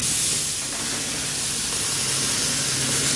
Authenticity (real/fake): real